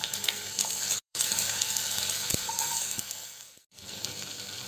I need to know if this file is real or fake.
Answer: fake